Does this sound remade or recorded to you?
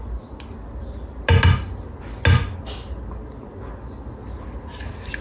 recorded